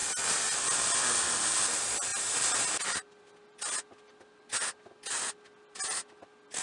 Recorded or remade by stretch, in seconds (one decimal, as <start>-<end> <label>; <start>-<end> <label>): 0.0-6.6 recorded